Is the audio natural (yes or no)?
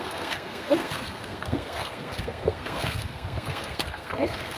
no